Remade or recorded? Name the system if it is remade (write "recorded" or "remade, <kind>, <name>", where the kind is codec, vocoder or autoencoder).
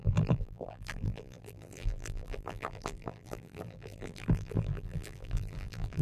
remade, vocoder, BigVGAN v2